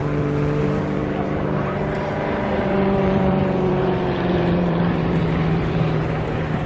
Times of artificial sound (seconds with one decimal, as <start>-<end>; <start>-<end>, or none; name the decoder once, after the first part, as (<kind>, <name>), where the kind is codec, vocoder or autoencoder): 0.6-6.7 (vocoder, BigVGAN v2)